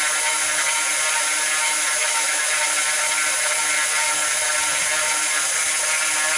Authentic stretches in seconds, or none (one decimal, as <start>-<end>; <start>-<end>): 0.0-2.0; 2.5-6.4